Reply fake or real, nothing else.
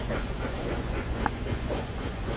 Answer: fake